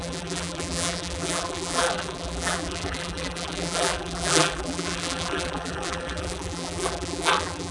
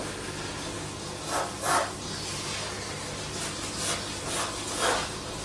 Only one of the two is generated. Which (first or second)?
first